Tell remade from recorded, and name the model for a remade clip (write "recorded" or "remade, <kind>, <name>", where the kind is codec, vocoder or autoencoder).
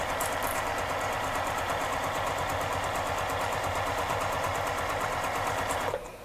remade, vocoder, BigVGAN v2